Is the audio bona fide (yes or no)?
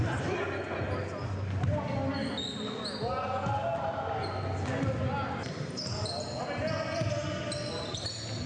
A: yes